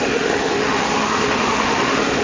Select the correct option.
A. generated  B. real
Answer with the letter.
A